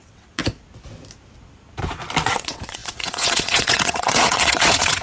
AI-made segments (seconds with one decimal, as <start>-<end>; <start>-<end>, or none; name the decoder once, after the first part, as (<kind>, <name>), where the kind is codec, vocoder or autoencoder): 0.0-0.4 (vocoder, WaveNeXt); 2.3-5.0